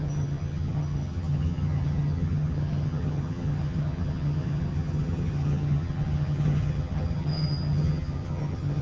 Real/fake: fake